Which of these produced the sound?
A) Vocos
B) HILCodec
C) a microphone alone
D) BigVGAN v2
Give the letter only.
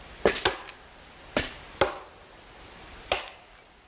C